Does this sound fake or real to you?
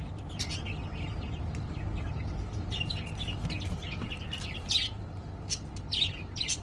real